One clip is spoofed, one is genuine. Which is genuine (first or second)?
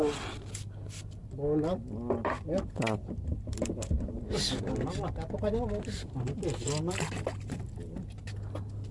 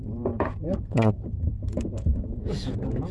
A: first